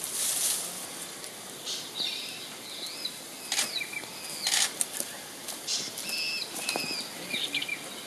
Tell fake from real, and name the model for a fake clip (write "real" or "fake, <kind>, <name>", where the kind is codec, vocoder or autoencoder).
real